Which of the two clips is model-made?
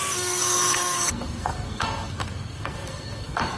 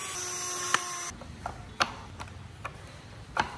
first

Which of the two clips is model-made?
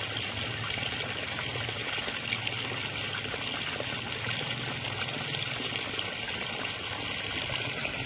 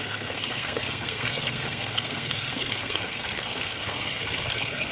second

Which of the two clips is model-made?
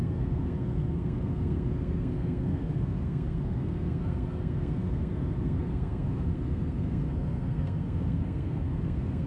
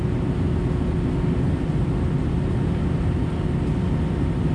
first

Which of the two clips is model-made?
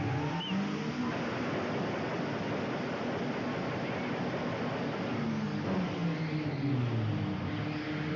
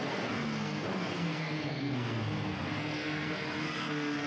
second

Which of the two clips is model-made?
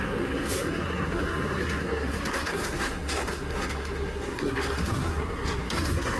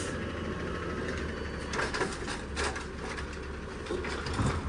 first